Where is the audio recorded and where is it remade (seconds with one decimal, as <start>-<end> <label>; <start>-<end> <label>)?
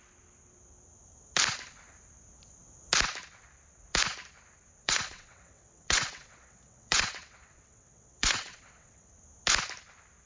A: 0.0-4.8 recorded; 4.8-9.1 remade; 9.1-10.3 recorded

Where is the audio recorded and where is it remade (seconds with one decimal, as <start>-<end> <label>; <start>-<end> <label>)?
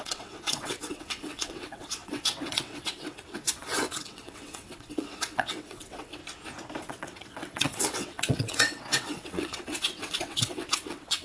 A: 0.0-6.2 remade; 6.2-6.8 recorded; 6.8-11.2 remade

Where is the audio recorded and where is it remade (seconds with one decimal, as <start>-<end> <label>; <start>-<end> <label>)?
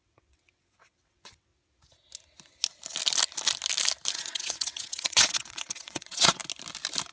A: 0.0-1.5 remade; 1.5-4.1 recorded; 4.1-6.4 remade; 6.4-7.1 recorded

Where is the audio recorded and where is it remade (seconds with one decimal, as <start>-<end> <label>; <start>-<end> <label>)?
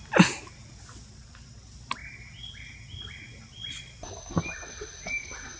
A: 0.0-5.6 recorded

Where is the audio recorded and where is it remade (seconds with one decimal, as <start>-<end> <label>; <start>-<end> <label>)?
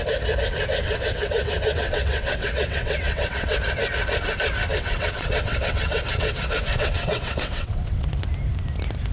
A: 0.0-0.8 recorded; 0.8-3.6 remade; 3.6-4.7 recorded; 4.7-8.1 remade; 8.1-9.1 recorded